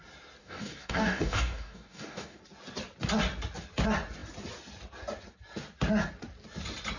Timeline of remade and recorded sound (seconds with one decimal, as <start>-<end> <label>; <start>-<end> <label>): 0.0-0.4 recorded; 0.4-2.4 remade; 2.4-7.0 recorded